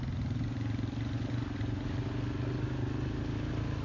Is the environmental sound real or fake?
real